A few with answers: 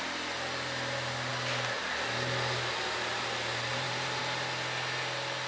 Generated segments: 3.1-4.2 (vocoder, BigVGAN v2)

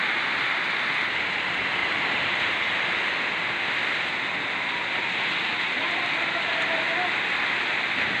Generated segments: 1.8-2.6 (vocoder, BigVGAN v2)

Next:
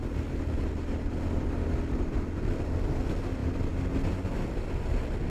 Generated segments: none

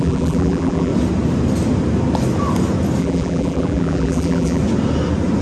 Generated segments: 0.0-0.9 (vocoder, BigVGAN v2); 3.0-4.6

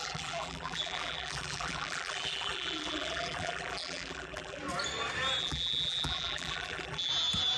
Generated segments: 0.0-4.6 (vocoder, BigVGAN v2); 5.4-7.1

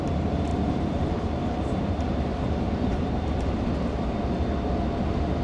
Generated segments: 0.5-3.7 (vocoder, BigVGAN v2)

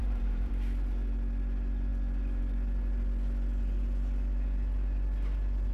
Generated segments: 0.0-0.5 (vocoder, BigVGAN v2)

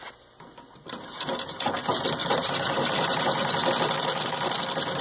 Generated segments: 2.2-3.7 (vocoder, BigVGAN v2)